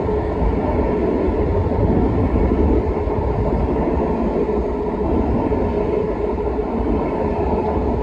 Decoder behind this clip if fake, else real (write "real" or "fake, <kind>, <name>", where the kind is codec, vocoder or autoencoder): real